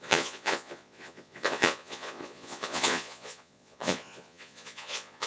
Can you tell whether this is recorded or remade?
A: remade